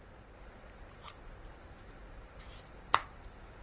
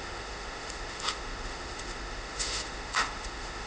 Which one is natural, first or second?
first